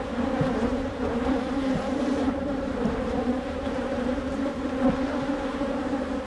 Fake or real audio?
fake